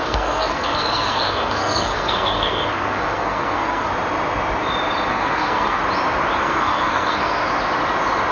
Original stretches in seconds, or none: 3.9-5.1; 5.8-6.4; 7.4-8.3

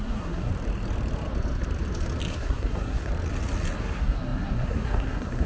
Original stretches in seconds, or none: 0.5-2.3; 3.1-3.8

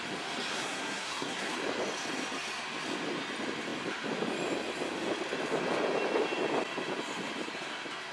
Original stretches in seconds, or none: 0.0-0.5; 1.5-8.1

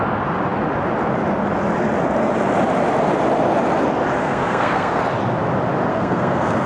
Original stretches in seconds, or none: 0.0-4.2; 5.0-5.9

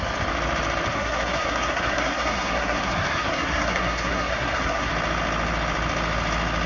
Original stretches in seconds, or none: 0.0-0.9; 4.9-6.7

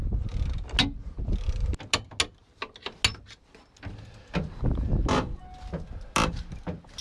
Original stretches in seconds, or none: 0.0-7.0

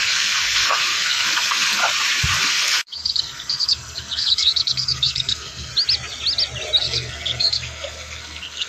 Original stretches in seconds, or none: 1.8-2.4; 5.7-6.8

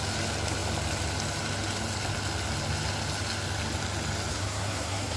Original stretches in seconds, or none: 0.0-4.3